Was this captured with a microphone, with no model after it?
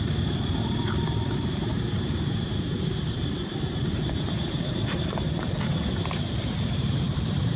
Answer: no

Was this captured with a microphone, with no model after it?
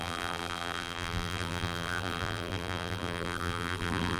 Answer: no